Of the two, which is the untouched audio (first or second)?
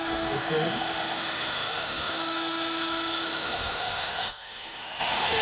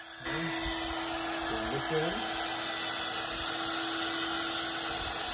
second